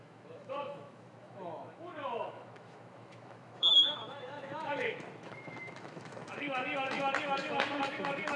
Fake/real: fake